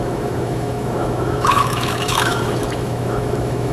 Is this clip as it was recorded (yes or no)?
no